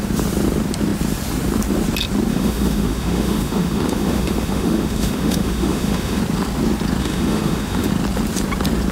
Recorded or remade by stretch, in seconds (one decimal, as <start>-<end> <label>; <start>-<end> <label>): 0.0-2.3 recorded; 2.3-6.2 remade; 6.2-7.0 recorded; 7.0-7.9 remade; 7.9-8.9 recorded